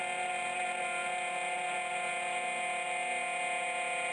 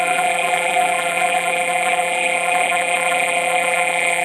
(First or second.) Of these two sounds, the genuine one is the first